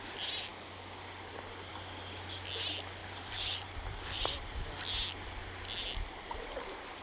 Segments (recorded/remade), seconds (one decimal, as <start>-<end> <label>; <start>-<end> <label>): 0.0-3.0 recorded; 3.0-4.7 remade; 4.7-7.0 recorded